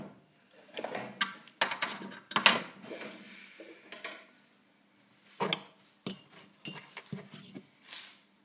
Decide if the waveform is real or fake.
real